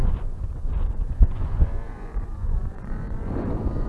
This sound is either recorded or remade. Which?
remade